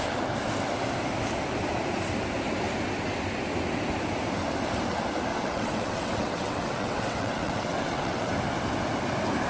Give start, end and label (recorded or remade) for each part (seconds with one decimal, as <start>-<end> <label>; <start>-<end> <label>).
0.0-5.3 recorded; 5.3-8.3 remade; 8.3-9.5 recorded